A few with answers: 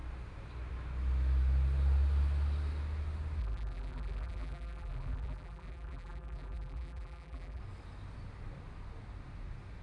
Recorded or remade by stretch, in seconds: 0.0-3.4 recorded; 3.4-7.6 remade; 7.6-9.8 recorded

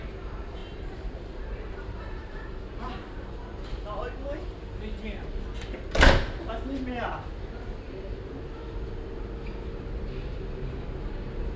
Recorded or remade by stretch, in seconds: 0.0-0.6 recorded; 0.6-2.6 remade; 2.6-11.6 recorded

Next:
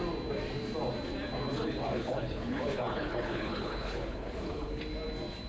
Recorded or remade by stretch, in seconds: 0.0-1.6 recorded; 1.6-4.8 remade; 4.8-5.5 recorded

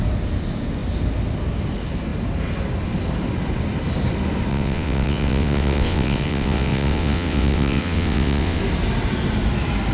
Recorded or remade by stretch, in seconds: 0.0-4.5 recorded; 4.5-8.6 remade; 8.6-9.9 recorded